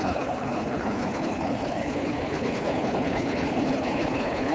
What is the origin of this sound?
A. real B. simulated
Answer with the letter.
B